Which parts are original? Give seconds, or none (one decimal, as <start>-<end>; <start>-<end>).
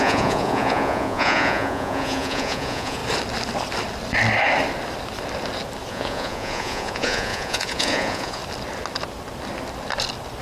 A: 3.0-5.9; 8.4-10.4